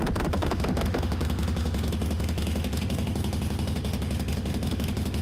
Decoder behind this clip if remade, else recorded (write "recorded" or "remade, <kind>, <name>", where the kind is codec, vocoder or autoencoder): remade, autoencoder, DAC-VAE